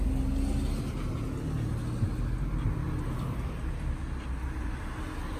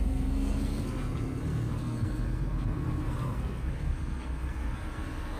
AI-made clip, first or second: second